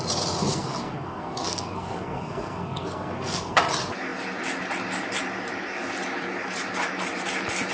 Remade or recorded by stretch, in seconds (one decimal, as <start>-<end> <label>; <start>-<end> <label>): 0.0-0.5 recorded; 0.5-3.6 remade; 3.6-7.7 recorded